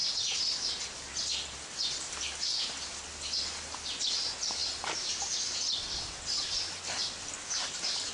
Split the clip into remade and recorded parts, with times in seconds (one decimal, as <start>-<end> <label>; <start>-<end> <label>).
0.0-8.1 recorded